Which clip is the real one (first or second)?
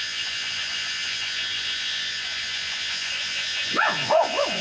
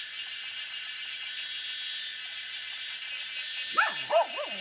second